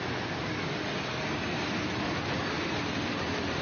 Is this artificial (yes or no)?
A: no